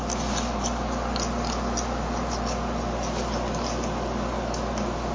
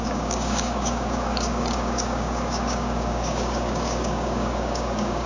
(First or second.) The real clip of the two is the first